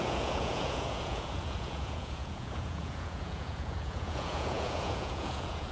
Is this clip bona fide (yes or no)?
no